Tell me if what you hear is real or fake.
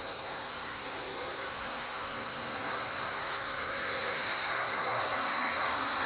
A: fake